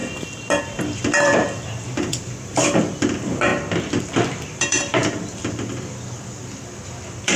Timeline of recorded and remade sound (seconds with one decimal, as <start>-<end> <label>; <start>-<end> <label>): 0.0-0.6 recorded; 0.6-3.5 remade; 3.5-4.0 recorded; 4.0-7.4 remade